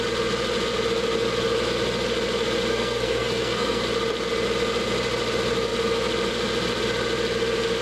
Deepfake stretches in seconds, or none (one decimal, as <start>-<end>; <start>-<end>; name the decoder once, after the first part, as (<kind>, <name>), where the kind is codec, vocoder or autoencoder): 2.7-3.8 (codec, SNAC)